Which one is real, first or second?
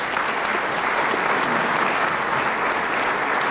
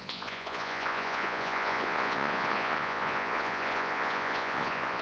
first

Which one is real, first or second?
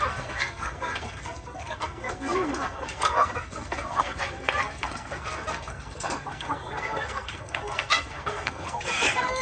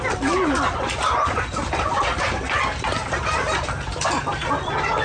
second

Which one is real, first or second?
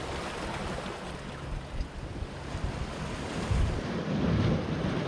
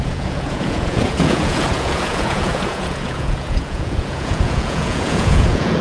first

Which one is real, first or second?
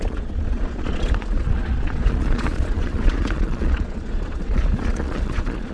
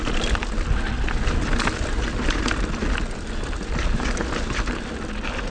second